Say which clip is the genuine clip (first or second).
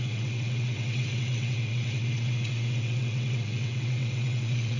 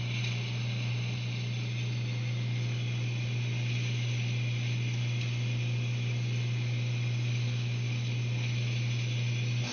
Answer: second